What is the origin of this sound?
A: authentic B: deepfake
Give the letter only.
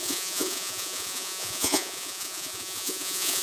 B